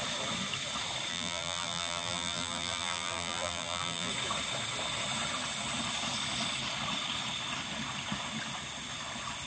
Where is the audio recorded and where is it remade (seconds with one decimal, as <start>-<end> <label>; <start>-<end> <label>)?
0.0-1.1 recorded; 1.1-4.1 remade; 4.1-9.5 recorded